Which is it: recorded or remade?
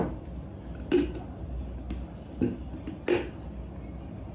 recorded